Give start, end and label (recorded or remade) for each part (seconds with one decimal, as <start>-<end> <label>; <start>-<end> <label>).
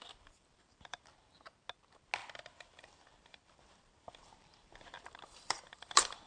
0.0-0.4 recorded; 0.4-1.0 remade; 1.0-2.2 recorded; 2.2-6.3 remade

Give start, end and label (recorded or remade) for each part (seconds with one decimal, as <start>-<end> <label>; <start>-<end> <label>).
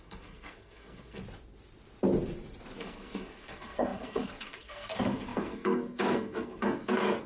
0.0-1.2 remade; 1.2-2.8 recorded; 2.8-7.3 remade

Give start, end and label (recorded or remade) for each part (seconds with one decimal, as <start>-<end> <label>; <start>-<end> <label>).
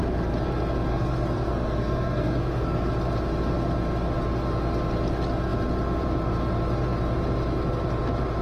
0.0-0.9 recorded; 0.9-2.9 remade; 2.9-8.4 recorded